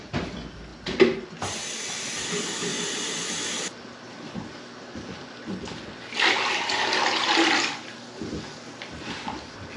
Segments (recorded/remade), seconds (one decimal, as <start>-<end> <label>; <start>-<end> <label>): 0.0-5.4 remade; 5.4-6.5 recorded; 6.5-9.8 remade